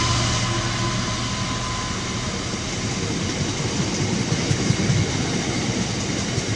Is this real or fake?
real